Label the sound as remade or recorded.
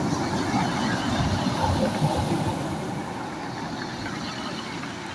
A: recorded